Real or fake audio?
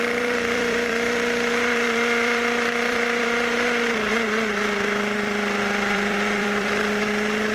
fake